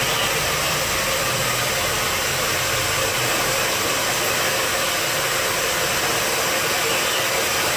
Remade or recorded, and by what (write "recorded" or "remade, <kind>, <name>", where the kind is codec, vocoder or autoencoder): recorded